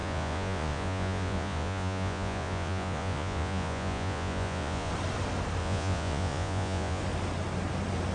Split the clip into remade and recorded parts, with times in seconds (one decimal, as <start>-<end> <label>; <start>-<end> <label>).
0.0-4.9 remade; 4.9-5.6 recorded; 5.6-7.0 remade; 7.0-8.1 recorded